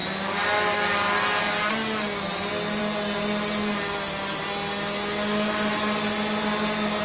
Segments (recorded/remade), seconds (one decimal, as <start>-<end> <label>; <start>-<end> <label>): 0.0-7.0 recorded